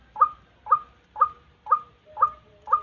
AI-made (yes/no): no